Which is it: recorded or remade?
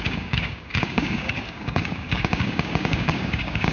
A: remade